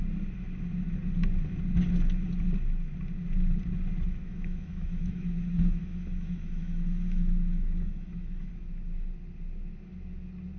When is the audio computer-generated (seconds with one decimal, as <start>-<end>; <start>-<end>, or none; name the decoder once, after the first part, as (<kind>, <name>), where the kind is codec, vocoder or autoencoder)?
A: 4.2-8.5 (autoencoder, DAC-VAE)